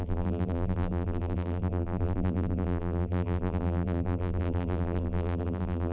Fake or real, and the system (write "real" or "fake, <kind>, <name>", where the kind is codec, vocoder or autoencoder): fake, vocoder, BigVGAN v2